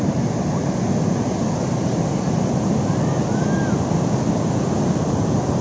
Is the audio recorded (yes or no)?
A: yes